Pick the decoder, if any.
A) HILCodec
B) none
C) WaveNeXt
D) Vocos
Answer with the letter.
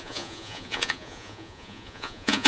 D